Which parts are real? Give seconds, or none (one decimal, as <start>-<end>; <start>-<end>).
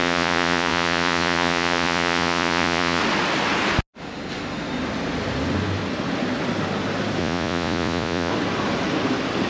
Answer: 3.0-7.2; 8.3-9.5